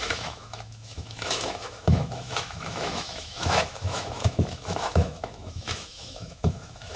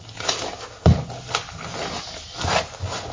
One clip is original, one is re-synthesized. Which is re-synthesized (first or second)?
first